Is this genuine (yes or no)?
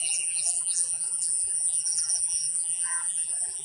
no